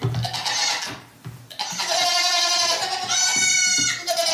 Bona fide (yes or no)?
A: yes